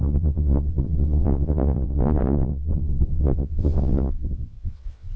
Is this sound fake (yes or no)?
yes